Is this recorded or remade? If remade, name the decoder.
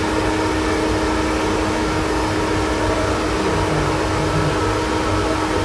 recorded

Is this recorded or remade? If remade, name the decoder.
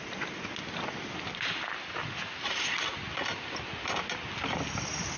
recorded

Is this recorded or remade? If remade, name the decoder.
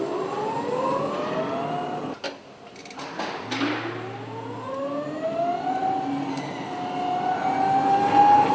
recorded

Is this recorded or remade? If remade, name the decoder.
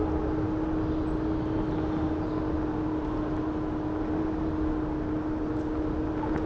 recorded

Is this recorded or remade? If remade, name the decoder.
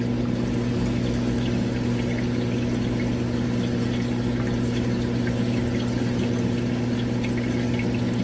recorded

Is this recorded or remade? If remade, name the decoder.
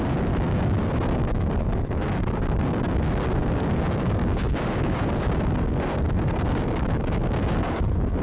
remade, codec, DAC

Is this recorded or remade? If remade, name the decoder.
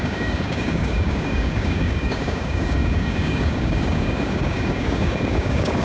remade, codec, DAC